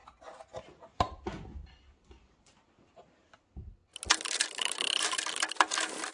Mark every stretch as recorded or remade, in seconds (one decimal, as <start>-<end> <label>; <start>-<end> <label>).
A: 0.0-6.1 recorded